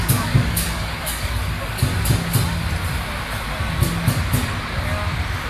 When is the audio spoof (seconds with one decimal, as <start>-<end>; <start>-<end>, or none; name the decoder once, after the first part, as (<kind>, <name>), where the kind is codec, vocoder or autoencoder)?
0.0-1.9 (codec, DAC)